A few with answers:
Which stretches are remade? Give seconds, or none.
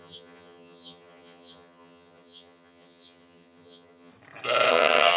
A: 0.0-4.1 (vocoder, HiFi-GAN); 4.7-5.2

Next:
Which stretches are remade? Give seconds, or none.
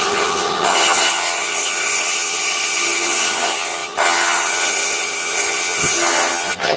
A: 0.0-6.8 (vocoder, HiFi-GAN)